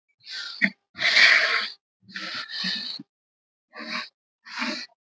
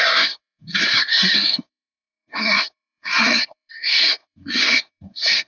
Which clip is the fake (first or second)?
second